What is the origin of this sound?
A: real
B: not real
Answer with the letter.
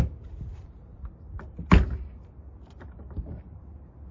A